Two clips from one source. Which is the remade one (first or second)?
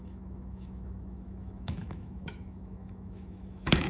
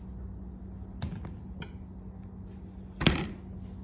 first